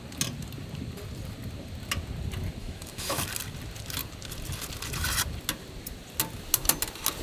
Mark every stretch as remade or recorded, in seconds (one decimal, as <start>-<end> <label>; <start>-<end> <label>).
0.0-2.6 recorded; 2.6-3.2 remade; 3.2-7.2 recorded